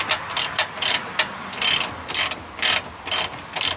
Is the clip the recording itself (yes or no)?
yes